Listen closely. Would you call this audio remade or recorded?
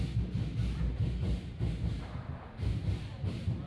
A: recorded